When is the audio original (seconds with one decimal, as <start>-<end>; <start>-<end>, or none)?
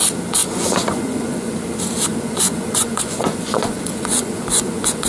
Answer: 0.0-0.4; 1.5-2.1